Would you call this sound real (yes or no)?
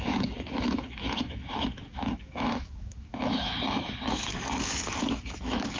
no